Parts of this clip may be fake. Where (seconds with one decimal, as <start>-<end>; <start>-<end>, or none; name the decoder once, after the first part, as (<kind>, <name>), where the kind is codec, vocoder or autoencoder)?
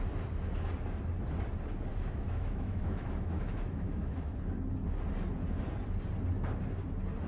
1.9-4.4 (autoencoder, DAC-VAE)